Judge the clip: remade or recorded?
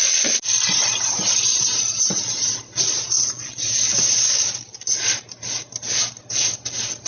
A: recorded